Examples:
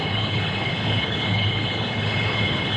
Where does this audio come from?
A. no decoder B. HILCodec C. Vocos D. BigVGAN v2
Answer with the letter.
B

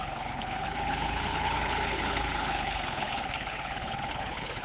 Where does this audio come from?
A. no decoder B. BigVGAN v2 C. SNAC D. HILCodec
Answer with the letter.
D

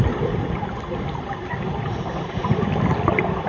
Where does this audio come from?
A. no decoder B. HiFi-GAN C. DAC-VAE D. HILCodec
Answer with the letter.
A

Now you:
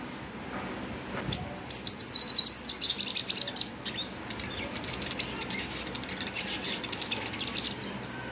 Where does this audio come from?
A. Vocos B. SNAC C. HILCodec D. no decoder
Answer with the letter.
D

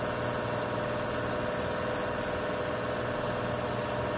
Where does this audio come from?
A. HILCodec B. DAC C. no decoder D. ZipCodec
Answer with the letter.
C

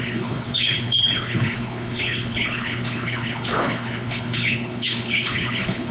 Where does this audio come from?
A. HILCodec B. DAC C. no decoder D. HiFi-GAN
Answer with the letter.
A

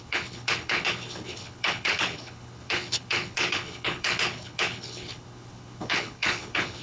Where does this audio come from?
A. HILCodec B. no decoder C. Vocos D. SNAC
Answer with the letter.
A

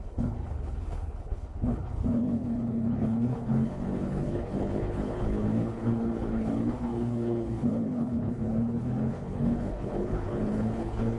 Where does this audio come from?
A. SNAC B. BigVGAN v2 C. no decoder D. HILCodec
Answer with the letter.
D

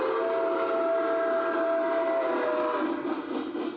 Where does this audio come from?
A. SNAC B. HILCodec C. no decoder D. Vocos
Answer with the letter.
C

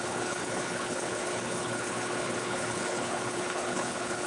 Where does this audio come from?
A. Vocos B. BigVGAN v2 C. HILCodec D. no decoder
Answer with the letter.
C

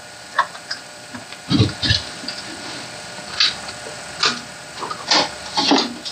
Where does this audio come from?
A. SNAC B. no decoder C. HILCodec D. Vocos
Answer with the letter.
B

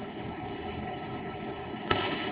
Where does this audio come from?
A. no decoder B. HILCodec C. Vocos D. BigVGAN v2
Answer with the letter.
B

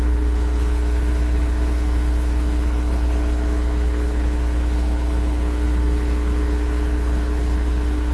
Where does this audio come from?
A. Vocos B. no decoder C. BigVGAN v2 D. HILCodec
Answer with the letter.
D